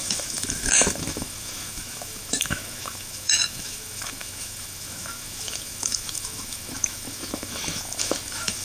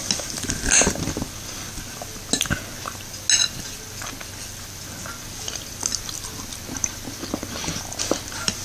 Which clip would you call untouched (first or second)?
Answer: second